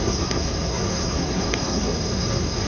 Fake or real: fake